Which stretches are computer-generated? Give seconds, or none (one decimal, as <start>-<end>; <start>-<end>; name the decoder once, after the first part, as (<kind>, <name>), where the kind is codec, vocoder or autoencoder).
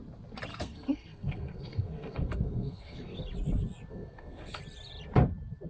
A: 0.5-3.2 (codec, SNAC); 3.9-4.6